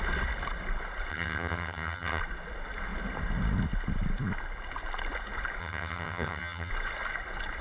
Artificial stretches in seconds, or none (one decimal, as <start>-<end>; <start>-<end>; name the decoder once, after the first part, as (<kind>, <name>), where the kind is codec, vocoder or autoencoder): 1.1-2.2 (vocoder, HiFi-GAN); 5.6-6.7